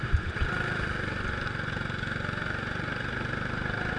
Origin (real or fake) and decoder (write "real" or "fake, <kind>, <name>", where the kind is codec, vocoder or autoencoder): real